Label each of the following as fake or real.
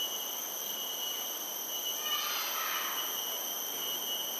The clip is real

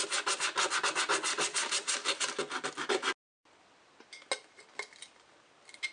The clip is real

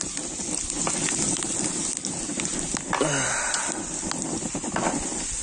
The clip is real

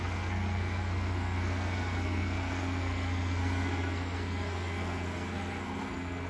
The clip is fake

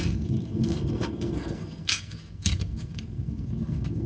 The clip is fake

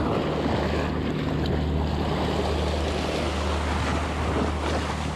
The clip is real